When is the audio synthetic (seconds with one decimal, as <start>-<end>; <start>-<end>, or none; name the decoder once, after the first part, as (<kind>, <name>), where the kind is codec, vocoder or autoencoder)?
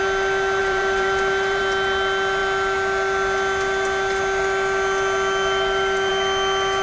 0.6-1.6 (vocoder, BigVGAN v2)